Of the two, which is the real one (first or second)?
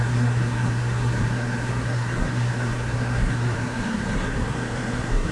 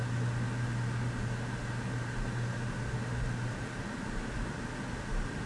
second